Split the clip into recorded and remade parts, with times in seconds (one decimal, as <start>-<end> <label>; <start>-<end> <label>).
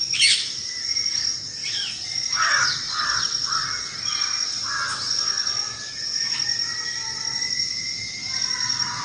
0.0-1.6 recorded; 1.6-3.6 remade; 3.6-6.7 recorded; 6.7-7.5 remade; 7.5-9.0 recorded